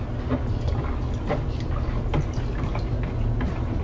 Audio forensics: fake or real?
real